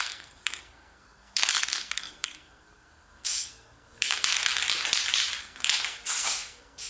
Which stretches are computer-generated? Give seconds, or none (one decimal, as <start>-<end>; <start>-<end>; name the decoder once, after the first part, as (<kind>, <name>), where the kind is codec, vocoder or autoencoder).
0.0-4.6 (codec, SNAC); 5.4-6.9